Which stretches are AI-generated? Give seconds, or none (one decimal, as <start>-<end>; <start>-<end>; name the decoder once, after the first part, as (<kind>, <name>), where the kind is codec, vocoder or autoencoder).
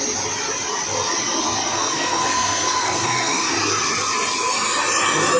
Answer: 1.7-3.5 (codec, SNAC)